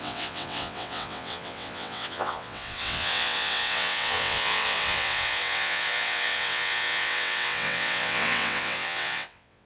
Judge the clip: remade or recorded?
remade